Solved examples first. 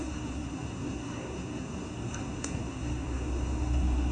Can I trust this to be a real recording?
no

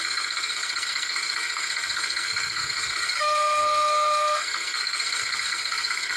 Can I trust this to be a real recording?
no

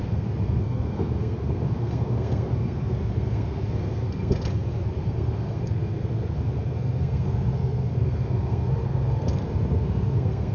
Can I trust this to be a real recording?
no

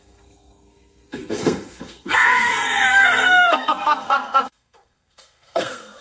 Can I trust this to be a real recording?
no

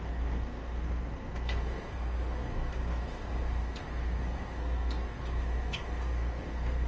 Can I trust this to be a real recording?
no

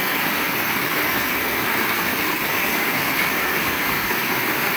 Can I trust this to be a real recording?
no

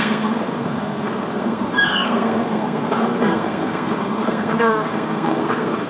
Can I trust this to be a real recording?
no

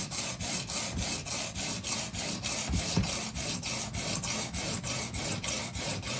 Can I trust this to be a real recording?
yes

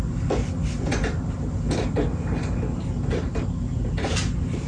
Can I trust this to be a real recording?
yes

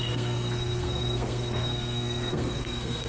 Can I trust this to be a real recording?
no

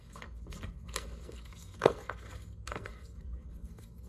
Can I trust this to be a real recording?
no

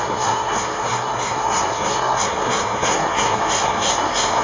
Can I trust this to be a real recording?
no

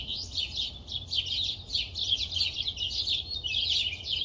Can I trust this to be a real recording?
yes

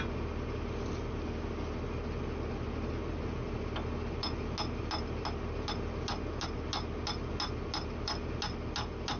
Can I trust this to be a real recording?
yes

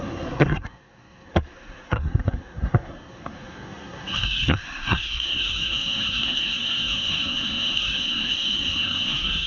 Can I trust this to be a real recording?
no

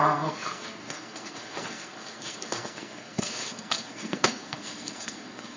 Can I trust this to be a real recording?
no